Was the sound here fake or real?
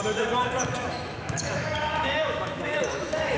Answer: fake